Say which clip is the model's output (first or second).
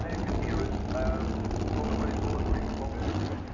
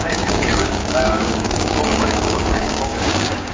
second